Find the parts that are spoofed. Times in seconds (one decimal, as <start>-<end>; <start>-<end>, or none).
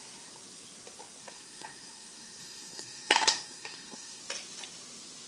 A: 1.2-4.2